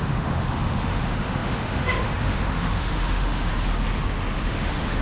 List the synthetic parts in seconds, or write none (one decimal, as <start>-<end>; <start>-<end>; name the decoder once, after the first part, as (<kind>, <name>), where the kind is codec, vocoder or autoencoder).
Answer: 0.0-3.5 (autoencoder, DAC-VAE); 4.5-5.0